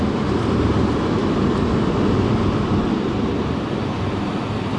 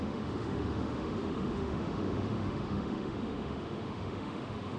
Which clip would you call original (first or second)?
first